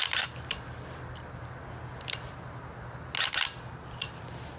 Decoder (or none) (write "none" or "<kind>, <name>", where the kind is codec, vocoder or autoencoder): none